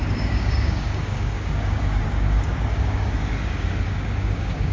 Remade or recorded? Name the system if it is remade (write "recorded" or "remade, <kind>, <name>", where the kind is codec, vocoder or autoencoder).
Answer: remade, codec, DAC